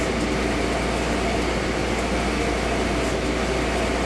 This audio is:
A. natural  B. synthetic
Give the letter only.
A